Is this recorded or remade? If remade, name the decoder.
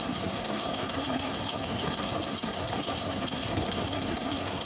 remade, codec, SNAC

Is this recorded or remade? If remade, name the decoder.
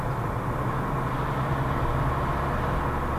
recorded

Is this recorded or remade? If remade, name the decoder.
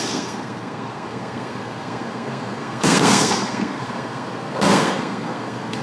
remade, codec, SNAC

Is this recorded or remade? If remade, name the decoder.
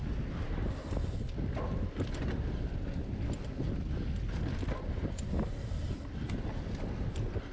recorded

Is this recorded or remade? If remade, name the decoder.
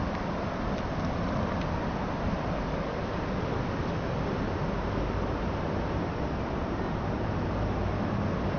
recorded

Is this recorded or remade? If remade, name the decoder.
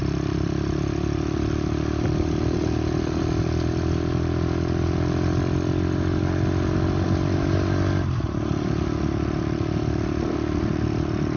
recorded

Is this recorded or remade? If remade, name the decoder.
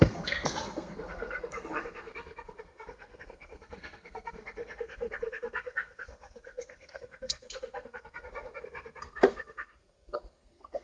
remade, codec, SNAC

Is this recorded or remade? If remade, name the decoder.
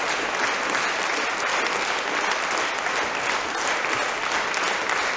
recorded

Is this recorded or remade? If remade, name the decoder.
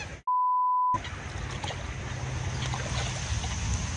recorded